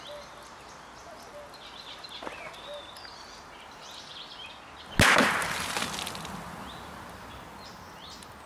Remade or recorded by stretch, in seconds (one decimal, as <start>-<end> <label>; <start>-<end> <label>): 0.0-8.5 recorded